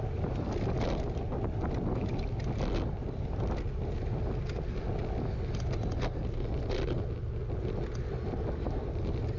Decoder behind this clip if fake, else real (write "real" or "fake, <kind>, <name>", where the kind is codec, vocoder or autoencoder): real